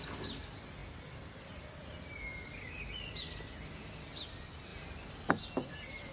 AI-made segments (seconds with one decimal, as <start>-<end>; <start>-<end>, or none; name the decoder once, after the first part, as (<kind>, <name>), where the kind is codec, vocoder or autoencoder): none

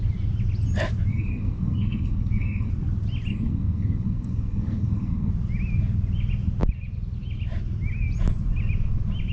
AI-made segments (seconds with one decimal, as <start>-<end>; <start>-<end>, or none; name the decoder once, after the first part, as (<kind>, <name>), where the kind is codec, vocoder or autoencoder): 1.1-2.7 (codec, SNAC); 3.3-5.3